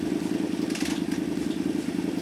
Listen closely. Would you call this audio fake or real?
real